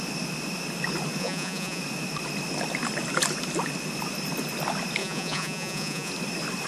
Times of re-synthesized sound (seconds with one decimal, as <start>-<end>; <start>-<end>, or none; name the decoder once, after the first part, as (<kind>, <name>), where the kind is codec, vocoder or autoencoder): 1.2-1.8 (vocoder, Vocos); 5.0-6.1